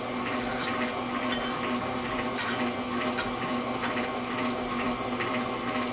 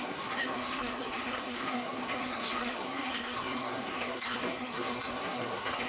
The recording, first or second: first